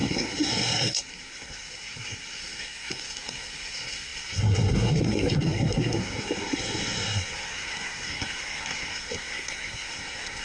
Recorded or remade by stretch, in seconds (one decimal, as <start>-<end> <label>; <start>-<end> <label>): 0.0-10.4 remade